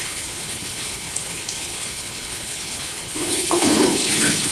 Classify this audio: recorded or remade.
remade